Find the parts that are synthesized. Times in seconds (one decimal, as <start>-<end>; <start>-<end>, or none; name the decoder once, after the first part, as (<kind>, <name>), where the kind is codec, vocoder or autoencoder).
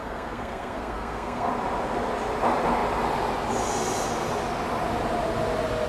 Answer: 0.0-1.5 (codec, SNAC)